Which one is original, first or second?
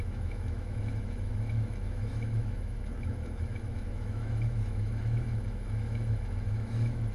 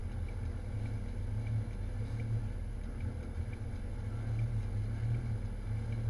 second